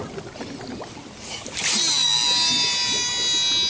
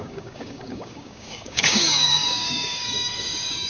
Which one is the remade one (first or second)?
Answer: second